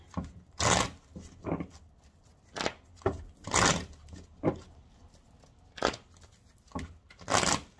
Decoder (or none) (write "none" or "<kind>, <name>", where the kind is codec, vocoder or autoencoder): none